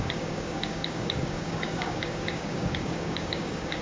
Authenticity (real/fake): fake